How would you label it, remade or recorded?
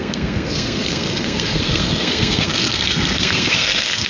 remade